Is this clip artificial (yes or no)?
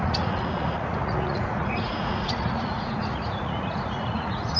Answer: yes